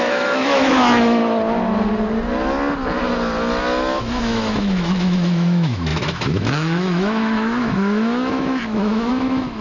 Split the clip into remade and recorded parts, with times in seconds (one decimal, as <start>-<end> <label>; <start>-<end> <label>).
0.0-1.2 remade; 1.2-4.2 recorded; 4.2-9.6 remade